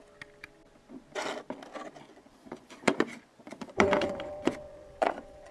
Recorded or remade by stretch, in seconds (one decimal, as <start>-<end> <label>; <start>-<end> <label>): 0.0-2.1 recorded; 2.1-5.5 remade